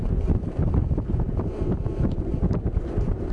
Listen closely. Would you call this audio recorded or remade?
remade